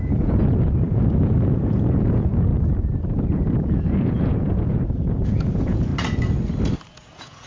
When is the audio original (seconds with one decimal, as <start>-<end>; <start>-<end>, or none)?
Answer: 2.5-3.6; 5.9-6.9

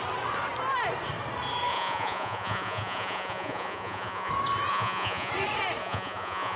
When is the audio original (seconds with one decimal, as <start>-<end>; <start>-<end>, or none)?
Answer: 0.0-1.7; 4.3-4.7; 5.3-5.8